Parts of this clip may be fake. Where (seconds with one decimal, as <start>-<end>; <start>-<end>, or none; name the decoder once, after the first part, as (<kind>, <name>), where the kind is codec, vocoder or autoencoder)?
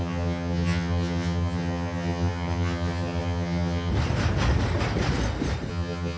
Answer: 0.0-3.9 (vocoder, HiFi-GAN); 5.7-6.2